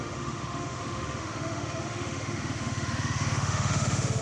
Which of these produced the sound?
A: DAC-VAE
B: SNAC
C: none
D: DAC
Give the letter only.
A